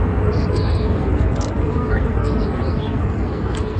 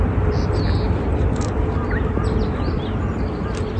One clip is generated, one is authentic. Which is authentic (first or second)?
second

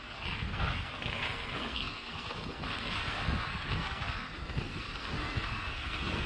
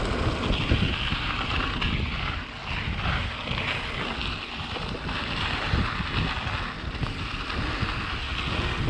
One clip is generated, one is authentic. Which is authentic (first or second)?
second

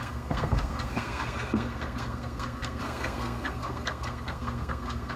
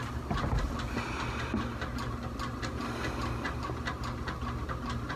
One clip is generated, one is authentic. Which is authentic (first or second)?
second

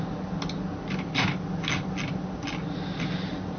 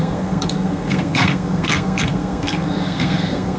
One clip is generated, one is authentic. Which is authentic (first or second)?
first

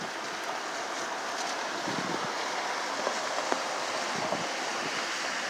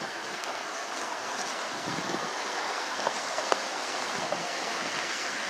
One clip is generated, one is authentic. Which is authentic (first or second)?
first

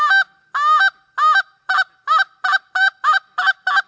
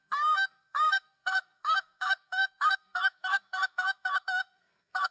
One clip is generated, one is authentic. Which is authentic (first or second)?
first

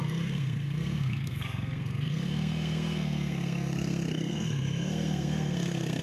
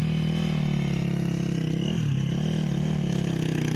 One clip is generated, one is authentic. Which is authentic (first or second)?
second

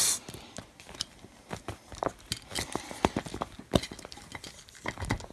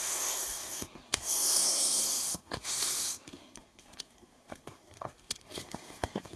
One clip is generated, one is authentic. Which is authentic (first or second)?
first